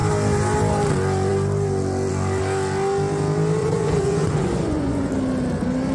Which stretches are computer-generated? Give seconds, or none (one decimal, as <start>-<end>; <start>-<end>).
3.6-5.1